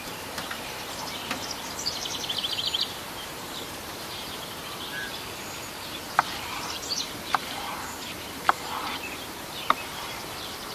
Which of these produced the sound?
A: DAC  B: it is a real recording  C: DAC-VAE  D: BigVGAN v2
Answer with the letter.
D